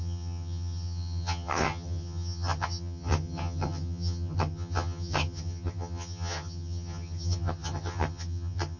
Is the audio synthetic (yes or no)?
yes